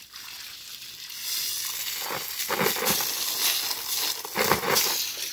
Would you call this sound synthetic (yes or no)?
no